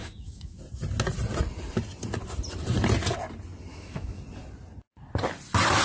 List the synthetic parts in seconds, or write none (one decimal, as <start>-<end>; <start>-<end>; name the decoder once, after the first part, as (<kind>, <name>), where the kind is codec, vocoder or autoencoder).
0.0-0.6 (autoencoder, DAC-VAE); 3.7-4.2